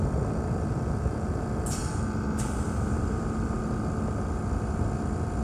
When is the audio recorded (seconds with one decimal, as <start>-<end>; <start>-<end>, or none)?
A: 0.0-1.8; 3.6-5.4